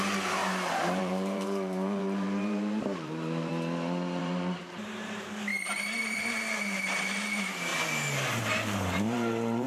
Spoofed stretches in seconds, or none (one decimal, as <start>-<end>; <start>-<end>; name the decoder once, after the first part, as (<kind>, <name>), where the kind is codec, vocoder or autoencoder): 0.0-0.4 (vocoder, BigVGAN v2); 1.0-3.5; 4.2-7.7; 8.4-9.7